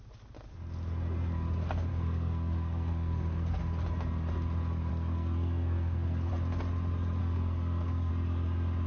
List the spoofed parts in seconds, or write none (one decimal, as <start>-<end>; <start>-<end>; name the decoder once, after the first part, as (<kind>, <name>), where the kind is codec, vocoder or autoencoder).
1.9-3.6 (codec, SNAC); 4.9-6.3; 7.2-8.1